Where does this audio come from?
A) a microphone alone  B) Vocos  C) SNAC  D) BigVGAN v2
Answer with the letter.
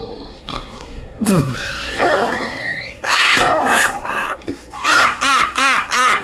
C